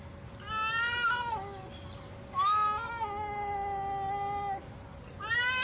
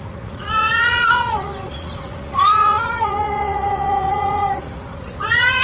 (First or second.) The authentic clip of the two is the first